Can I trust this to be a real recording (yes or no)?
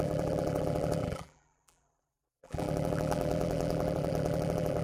no